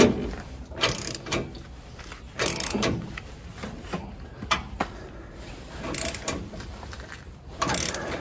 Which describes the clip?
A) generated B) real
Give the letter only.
A